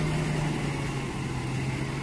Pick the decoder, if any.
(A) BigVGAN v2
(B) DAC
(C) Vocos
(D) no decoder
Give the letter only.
D